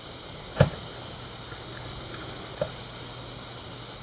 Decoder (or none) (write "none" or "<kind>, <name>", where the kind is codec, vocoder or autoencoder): none